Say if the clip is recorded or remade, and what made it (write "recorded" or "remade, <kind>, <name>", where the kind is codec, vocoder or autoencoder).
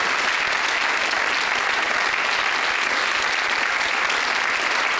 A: recorded